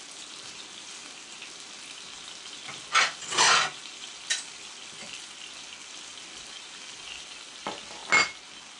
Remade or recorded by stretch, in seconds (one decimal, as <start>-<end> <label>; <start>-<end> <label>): 0.0-8.8 recorded